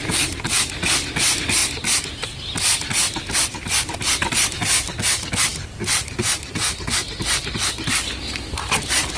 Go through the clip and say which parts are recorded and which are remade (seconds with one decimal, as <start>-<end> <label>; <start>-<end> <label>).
0.0-9.2 recorded